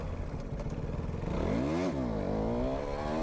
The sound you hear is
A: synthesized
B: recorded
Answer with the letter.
B